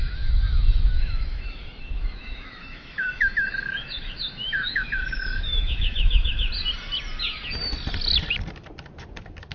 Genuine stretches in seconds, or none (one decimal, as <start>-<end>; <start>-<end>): 6.5-9.5